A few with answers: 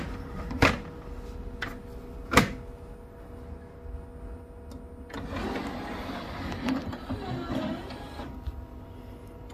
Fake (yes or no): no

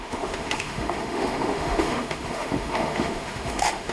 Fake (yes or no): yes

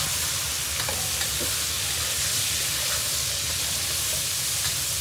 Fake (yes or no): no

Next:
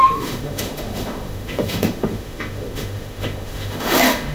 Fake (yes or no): yes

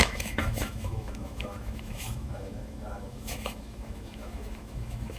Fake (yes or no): yes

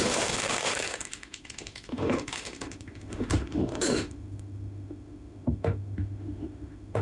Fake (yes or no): yes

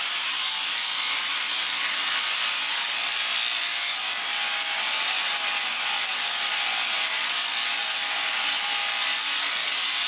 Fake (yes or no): no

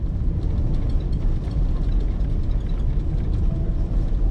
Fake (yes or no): no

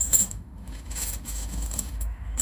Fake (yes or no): yes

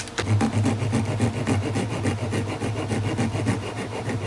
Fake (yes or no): no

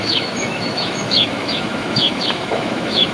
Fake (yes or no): yes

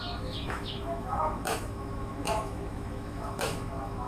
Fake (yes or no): yes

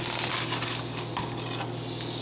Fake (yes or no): no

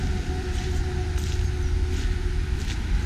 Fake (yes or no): no